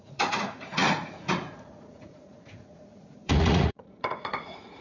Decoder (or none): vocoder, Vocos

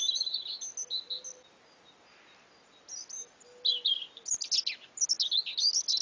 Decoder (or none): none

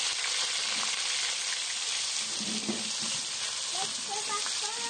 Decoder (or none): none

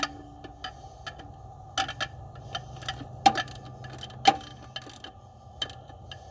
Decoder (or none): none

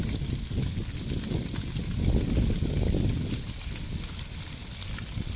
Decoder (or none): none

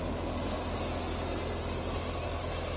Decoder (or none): none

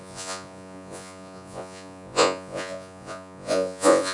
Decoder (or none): vocoder, Vocos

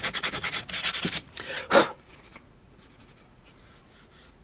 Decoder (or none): vocoder, Vocos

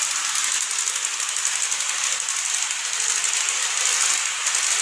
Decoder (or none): none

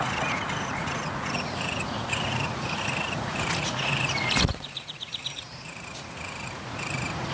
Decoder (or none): vocoder, Vocos